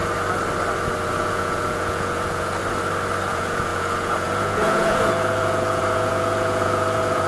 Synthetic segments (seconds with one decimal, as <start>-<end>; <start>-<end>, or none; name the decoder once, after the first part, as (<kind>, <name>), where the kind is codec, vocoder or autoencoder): 1.1-2.6 (vocoder, Vocos); 3.3-7.3